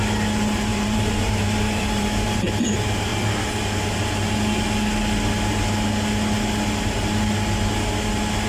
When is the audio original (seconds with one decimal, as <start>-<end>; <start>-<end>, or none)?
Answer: 0.0-0.7; 2.4-8.5